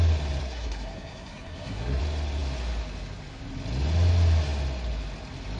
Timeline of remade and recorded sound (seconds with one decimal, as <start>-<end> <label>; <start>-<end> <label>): 0.0-0.4 recorded; 0.4-2.0 remade; 2.0-5.6 recorded